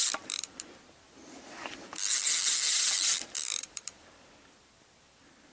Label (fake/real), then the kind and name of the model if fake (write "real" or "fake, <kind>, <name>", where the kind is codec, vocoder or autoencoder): fake, vocoder, BigVGAN v2